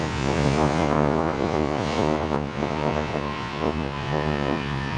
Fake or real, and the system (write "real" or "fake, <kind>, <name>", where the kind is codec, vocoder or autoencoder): fake, vocoder, Vocos